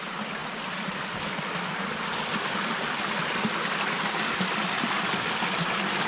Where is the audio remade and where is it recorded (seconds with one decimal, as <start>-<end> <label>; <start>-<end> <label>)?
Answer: 0.0-6.1 recorded